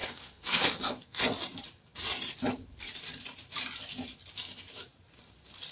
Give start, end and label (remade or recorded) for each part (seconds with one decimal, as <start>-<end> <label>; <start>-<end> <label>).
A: 0.0-1.2 remade; 1.2-5.7 recorded